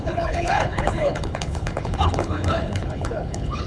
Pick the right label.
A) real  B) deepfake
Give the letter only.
B